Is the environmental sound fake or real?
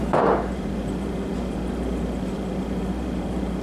fake